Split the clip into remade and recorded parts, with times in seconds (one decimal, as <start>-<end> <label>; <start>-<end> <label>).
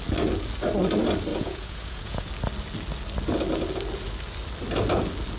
0.0-1.3 recorded; 1.3-2.3 remade; 2.3-5.4 recorded